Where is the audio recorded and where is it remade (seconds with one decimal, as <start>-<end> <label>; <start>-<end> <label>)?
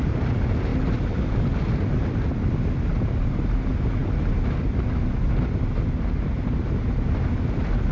0.0-7.9 recorded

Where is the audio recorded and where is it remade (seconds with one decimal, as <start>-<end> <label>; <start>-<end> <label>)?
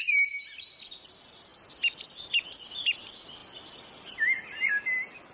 0.0-5.3 recorded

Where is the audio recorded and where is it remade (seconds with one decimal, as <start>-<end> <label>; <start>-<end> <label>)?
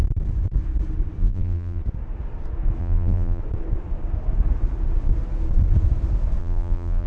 0.0-1.2 recorded; 1.2-1.8 remade; 1.8-2.8 recorded; 2.8-3.4 remade; 3.4-6.4 recorded; 6.4-7.1 remade